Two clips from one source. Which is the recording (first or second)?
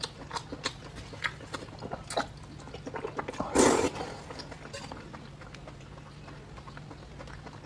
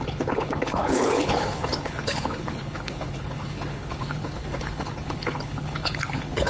first